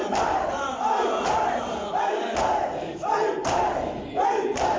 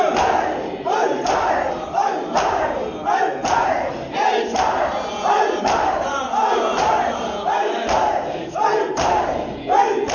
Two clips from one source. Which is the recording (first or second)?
second